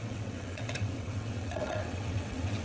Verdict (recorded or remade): remade